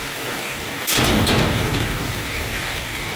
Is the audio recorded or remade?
remade